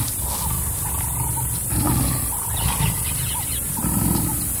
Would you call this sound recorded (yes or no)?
yes